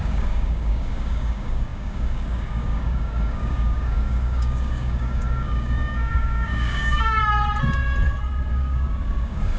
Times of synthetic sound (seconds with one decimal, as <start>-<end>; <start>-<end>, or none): 0.0-7.2; 8.5-9.6